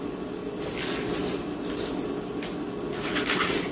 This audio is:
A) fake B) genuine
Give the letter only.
B